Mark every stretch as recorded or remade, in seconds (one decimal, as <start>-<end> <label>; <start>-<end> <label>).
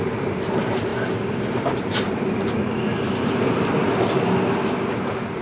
0.0-0.9 remade; 0.9-1.4 recorded; 1.4-2.7 remade; 2.7-5.4 recorded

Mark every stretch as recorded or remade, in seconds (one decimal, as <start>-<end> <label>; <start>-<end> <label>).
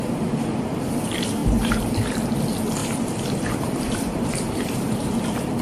0.0-1.4 recorded; 1.4-1.9 remade; 1.9-2.8 recorded; 2.8-5.1 remade; 5.1-5.6 recorded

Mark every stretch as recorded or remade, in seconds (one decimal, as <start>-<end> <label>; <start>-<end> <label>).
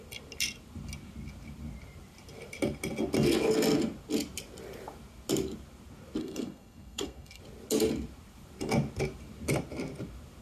0.0-6.2 recorded; 6.2-7.4 remade; 7.4-10.4 recorded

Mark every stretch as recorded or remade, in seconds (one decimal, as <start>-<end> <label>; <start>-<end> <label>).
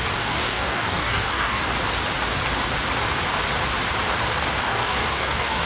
0.0-1.7 remade; 1.7-4.6 recorded; 4.6-5.7 remade